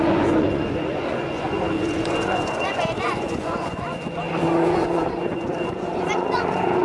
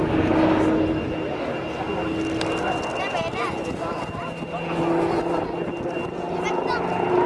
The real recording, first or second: second